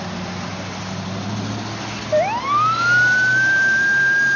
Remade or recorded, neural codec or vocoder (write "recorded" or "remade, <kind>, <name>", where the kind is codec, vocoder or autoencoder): recorded